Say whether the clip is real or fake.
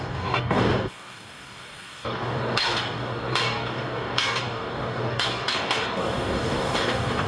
fake